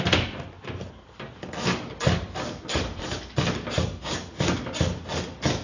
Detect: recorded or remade recorded